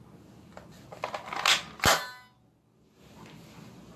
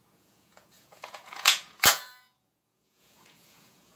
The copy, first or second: second